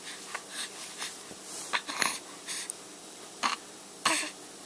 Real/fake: real